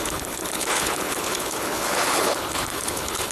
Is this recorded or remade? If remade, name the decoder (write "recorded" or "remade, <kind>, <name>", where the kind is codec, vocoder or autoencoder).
remade, codec, HILCodec